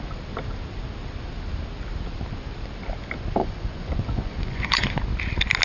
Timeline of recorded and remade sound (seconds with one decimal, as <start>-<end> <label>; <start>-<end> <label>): 0.0-3.4 recorded; 3.4-5.0 remade; 5.0-5.6 recorded